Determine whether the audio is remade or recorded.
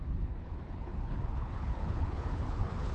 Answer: remade